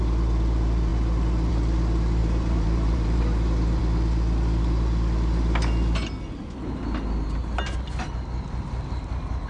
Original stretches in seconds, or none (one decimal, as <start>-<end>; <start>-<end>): 0.0-2.2; 3.2-9.5